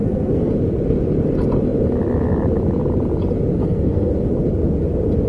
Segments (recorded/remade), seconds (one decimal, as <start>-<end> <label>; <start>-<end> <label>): 0.0-0.5 remade; 0.5-3.6 recorded; 3.6-4.1 remade; 4.1-5.3 recorded